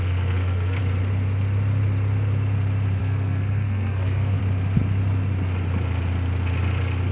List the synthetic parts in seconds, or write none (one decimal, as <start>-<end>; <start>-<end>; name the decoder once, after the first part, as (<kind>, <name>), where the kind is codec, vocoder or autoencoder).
0.0-0.8 (codec, SNAC); 3.0-4.4